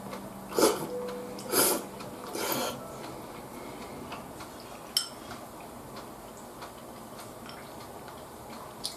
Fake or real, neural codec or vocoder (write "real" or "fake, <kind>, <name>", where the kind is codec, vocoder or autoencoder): real